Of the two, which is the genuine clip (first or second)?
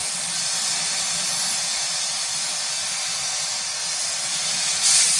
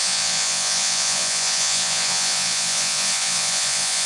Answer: first